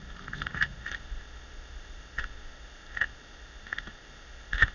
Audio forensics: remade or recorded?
remade